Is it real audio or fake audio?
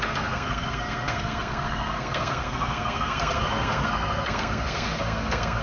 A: fake